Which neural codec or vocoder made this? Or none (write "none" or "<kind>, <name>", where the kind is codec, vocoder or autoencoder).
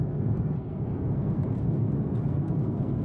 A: codec, SNAC